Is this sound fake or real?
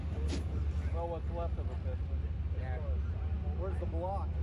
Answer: real